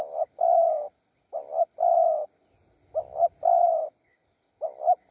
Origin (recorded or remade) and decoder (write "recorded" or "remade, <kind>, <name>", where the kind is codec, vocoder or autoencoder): recorded